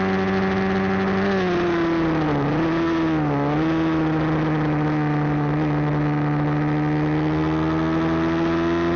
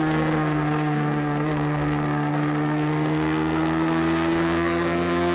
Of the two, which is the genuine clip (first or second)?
first